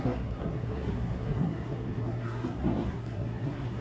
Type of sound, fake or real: fake